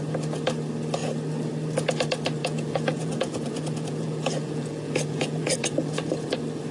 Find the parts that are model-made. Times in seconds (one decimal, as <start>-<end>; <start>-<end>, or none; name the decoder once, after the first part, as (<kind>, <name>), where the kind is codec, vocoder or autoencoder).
2.4-6.1 (vocoder, Vocos)